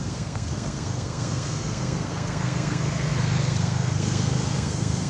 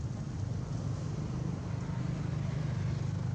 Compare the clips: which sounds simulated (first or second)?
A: first